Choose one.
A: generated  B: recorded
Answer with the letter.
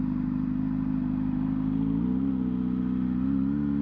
B